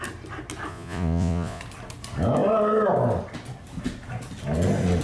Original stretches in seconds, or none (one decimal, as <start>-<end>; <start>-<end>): 0.0-0.7; 1.6-5.0